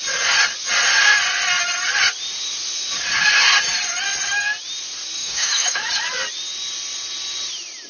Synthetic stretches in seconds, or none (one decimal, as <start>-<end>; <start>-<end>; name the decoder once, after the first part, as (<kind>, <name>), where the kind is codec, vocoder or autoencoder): 5.2-5.9 (autoencoder, DAC-VAE)